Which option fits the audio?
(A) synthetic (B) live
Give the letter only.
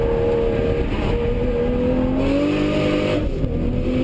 B